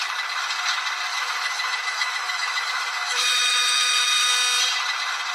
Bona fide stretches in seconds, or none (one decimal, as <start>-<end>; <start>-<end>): 0.0-1.1; 4.3-5.3